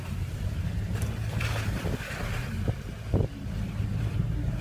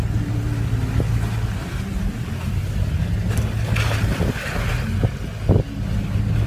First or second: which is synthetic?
first